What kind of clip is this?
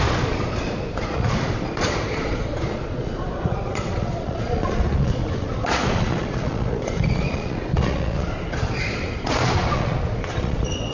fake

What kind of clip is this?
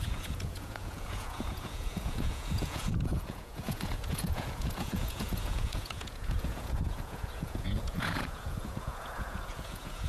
fake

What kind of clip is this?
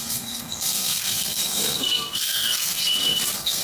fake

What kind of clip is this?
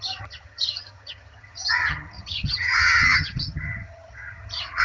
fake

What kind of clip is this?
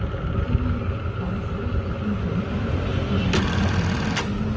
real